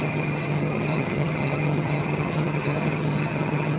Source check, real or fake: fake